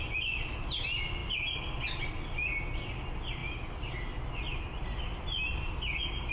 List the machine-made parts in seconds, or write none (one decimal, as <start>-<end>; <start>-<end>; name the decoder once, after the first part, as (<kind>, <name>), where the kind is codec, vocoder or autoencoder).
none